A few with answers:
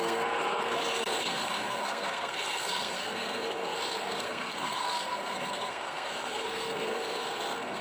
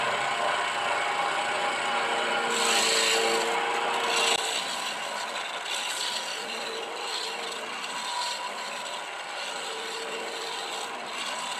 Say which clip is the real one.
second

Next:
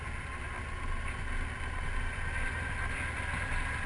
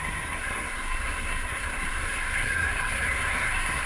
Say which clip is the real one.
first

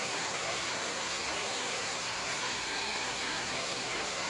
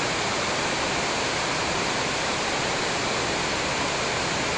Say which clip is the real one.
second